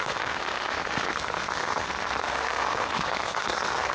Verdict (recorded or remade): remade